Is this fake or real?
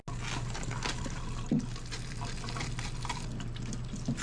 real